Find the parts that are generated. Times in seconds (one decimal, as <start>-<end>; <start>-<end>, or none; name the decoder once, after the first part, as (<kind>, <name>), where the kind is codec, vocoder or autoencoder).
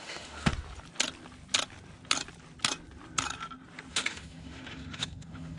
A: 0.0-0.5 (autoencoder, DAC-VAE); 3.9-5.6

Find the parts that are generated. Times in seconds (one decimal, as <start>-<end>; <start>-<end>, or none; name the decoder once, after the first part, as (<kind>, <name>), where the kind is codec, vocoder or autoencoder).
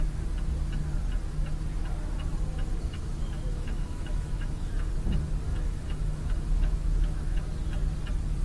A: 2.7-4.9 (autoencoder, DAC-VAE); 5.5-7.4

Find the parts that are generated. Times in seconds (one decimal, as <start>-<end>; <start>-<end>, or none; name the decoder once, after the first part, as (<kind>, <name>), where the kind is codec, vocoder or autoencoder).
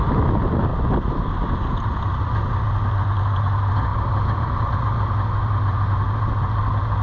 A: none